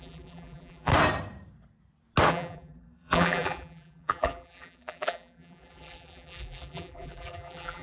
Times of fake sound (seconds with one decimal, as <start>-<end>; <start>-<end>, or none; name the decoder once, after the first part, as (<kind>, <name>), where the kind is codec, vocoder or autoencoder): 0.0-0.9 (vocoder, BigVGAN v2); 2.3-7.8